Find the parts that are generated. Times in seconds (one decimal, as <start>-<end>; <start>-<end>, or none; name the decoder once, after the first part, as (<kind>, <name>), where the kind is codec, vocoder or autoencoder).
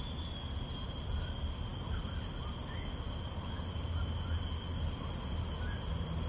1.7-2.4 (vocoder, BigVGAN v2); 4.7-6.3